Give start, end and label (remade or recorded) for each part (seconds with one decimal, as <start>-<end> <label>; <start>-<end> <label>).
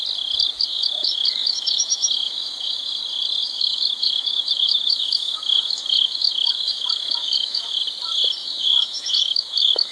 0.0-0.7 recorded; 0.7-3.0 remade; 3.0-3.4 recorded; 3.4-7.8 remade; 7.8-8.4 recorded; 8.4-9.9 remade